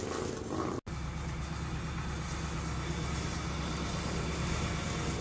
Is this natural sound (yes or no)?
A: yes